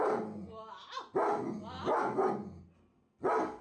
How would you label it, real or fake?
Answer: real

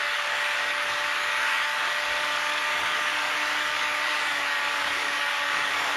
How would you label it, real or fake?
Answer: fake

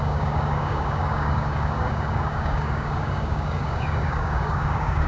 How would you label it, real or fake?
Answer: fake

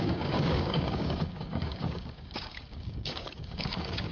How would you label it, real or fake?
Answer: fake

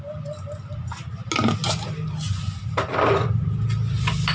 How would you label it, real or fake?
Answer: real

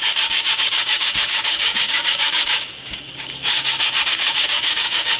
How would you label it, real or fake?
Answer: fake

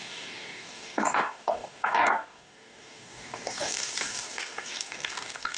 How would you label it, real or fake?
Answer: fake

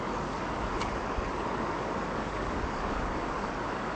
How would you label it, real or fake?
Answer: fake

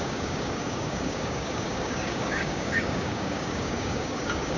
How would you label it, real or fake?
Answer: fake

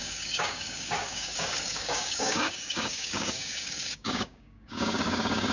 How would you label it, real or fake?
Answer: fake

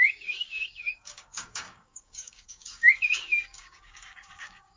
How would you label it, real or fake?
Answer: fake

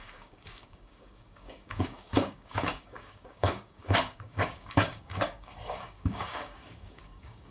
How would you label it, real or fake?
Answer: fake